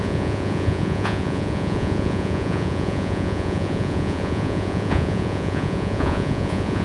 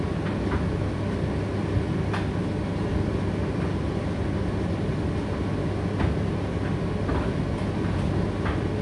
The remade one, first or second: first